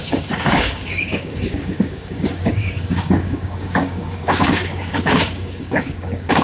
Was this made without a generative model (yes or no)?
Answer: no